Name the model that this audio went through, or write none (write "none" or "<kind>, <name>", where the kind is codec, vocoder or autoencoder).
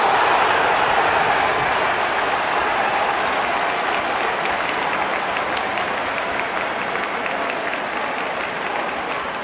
none